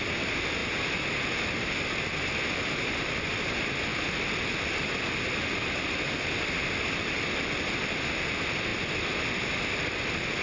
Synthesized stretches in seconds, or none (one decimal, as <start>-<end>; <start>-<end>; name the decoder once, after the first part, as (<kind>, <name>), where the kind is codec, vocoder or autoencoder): none